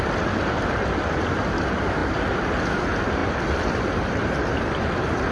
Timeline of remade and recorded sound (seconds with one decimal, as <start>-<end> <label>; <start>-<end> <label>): 0.0-5.3 recorded